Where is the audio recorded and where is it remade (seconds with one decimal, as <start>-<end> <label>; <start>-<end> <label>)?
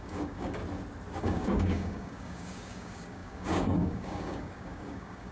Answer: 0.0-0.6 remade; 0.6-1.2 recorded; 1.2-5.3 remade